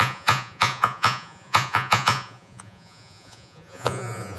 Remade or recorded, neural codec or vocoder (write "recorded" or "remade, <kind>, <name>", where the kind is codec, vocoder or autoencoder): remade, vocoder, Vocos